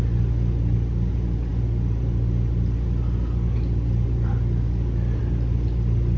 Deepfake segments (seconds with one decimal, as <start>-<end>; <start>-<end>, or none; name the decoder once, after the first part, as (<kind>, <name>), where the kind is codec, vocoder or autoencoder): none